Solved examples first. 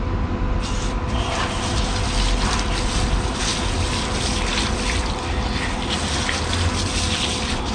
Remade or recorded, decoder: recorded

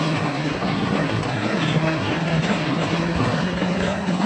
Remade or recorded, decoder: remade, codec, SNAC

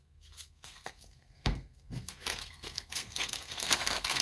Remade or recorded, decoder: remade, codec, SNAC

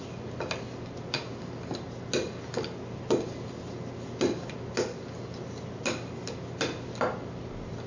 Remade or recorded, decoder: recorded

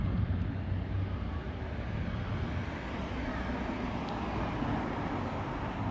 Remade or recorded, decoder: recorded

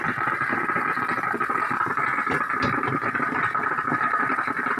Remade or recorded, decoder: recorded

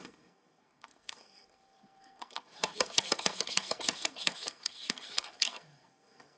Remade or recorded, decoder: remade, codec, SNAC